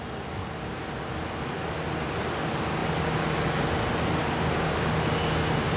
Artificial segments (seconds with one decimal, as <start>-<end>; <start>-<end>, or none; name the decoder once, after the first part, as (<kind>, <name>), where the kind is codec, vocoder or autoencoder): none